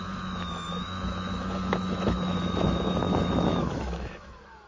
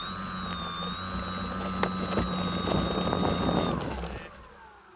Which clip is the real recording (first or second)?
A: second